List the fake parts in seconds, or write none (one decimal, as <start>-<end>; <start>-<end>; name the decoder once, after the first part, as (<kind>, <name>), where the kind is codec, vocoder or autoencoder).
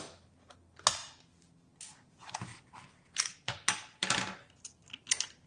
none